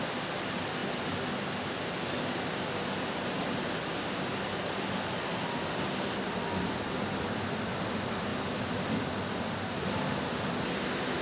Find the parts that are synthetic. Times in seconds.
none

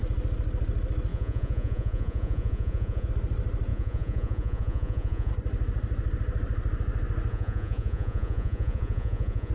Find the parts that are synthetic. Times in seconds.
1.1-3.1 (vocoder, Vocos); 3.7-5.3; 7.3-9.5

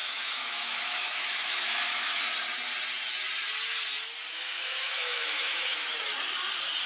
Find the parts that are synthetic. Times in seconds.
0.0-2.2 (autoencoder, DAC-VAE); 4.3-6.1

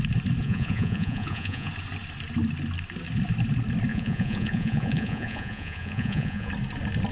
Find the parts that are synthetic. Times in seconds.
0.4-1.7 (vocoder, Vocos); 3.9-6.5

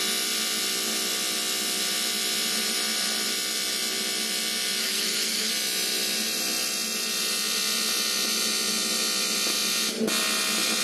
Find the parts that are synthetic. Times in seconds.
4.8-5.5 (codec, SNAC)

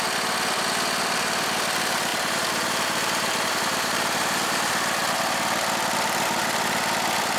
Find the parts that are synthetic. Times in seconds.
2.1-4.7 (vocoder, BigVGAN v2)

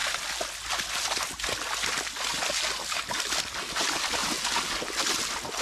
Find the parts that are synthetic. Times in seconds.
none

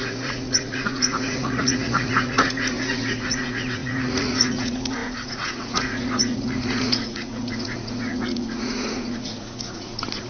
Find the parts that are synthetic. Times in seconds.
0.0-10.3 (vocoder, Vocos)